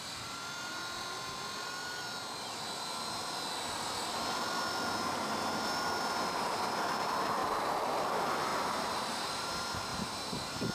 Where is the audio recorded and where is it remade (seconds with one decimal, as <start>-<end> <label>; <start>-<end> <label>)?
0.0-7.4 recorded; 7.4-8.1 remade; 8.1-8.5 recorded; 8.5-9.5 remade; 9.5-9.9 recorded; 9.9-10.7 remade